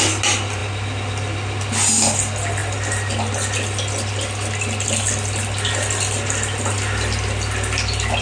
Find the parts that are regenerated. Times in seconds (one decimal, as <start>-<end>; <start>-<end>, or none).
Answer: none